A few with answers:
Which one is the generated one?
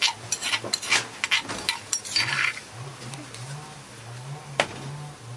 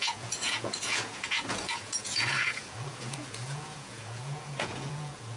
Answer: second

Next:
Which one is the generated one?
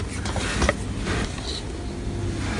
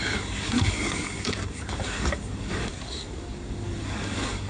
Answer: second